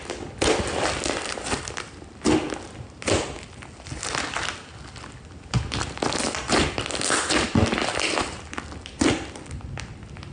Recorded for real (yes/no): yes